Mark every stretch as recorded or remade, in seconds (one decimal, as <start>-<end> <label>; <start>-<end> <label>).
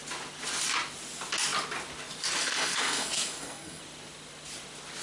0.0-2.4 recorded; 2.4-3.8 remade; 3.8-5.0 recorded